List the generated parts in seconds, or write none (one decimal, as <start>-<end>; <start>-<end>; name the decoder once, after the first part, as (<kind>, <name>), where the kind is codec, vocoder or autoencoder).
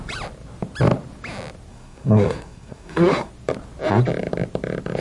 1.7-3.3 (codec, SNAC)